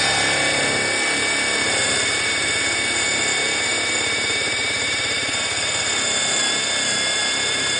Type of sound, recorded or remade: recorded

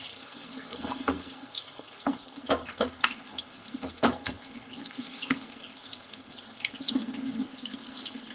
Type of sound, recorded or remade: remade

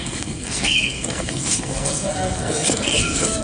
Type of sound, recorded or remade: remade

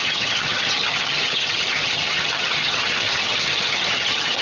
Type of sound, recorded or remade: remade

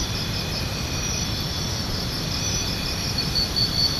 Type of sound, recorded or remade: recorded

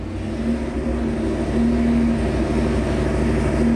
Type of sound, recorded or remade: recorded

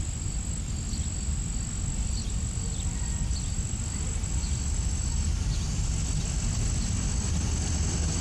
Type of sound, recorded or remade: recorded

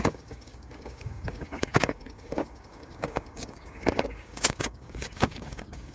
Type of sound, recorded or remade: remade